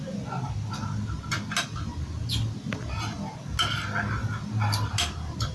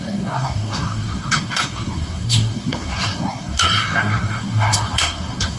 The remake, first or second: second